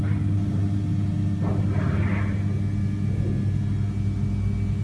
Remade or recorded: recorded